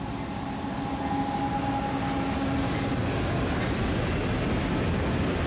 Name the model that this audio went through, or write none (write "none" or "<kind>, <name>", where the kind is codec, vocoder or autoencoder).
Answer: none